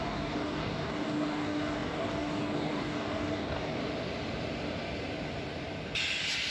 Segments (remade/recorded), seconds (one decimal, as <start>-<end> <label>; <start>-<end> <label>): 0.0-3.8 remade; 3.8-6.5 recorded